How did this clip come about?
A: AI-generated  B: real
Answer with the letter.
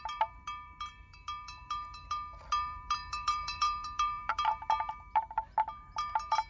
A